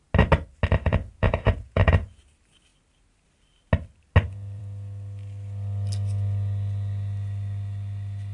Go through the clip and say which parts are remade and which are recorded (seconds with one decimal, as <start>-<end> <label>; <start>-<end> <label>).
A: 0.0-0.9 recorded; 0.9-2.2 remade; 2.2-8.3 recorded

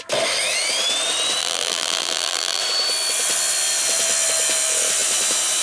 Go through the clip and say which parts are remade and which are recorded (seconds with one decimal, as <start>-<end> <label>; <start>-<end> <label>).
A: 0.0-1.4 recorded; 1.4-2.6 remade; 2.6-5.6 recorded

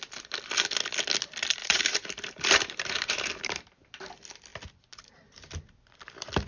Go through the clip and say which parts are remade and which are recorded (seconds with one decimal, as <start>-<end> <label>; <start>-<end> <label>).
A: 0.0-1.6 recorded; 1.6-4.0 remade; 4.0-6.5 recorded

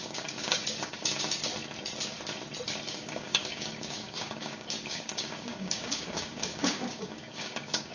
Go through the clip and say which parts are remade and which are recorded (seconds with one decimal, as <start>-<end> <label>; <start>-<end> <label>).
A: 0.0-1.5 remade; 1.5-2.9 recorded; 2.9-7.9 remade